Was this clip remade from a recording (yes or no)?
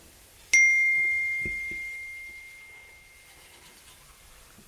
no